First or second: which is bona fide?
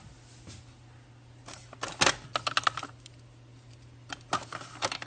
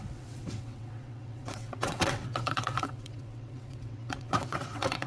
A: first